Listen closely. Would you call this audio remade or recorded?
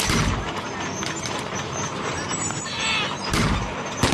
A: recorded